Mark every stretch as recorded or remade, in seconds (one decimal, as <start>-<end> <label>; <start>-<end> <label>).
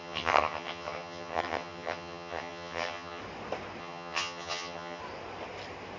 0.0-3.2 remade; 3.2-3.8 recorded; 3.8-5.0 remade; 5.0-6.0 recorded